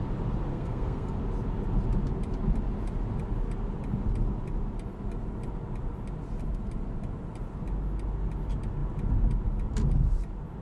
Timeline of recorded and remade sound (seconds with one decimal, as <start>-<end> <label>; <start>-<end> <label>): 0.0-0.5 recorded; 0.5-1.2 remade; 1.2-10.6 recorded